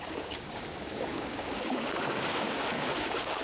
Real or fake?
fake